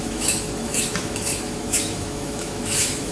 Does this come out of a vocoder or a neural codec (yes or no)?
yes